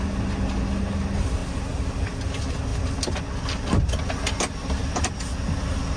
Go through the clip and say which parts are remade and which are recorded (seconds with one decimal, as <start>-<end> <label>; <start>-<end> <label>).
0.0-6.0 recorded